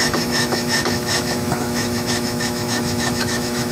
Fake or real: fake